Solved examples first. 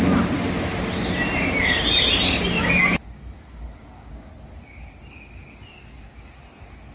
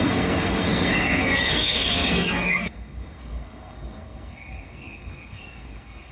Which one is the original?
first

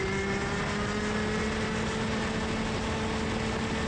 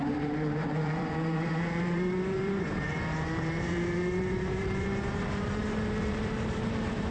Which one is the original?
first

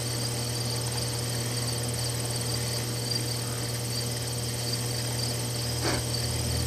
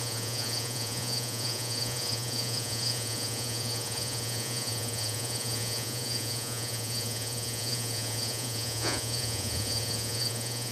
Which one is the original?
first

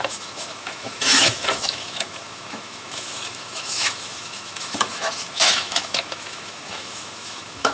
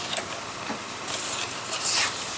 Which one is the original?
second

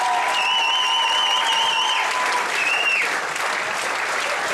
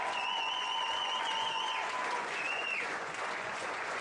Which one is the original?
first